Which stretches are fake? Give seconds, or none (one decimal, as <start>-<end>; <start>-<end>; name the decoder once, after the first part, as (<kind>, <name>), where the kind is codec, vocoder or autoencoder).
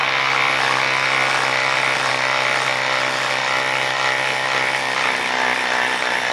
none